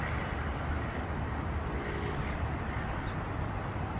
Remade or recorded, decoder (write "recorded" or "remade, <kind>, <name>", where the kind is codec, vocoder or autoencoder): recorded